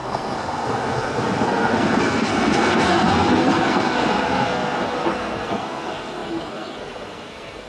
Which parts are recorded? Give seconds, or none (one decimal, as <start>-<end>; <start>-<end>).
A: none